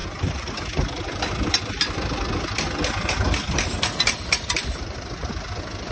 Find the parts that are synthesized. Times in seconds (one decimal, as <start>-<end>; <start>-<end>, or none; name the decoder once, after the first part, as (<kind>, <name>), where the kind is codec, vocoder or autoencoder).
none